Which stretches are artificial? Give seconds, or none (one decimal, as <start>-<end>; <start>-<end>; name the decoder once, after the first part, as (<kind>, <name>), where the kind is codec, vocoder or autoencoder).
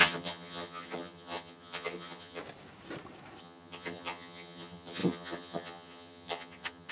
0.0-2.4 (vocoder, HiFi-GAN); 3.4-6.9